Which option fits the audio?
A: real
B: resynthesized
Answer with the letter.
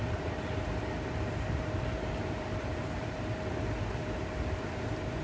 B